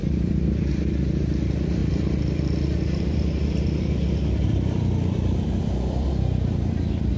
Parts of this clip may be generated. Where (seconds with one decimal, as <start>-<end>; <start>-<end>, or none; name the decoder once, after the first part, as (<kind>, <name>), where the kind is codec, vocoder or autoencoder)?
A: 0.0-0.7 (vocoder, BigVGAN v2); 1.8-6.1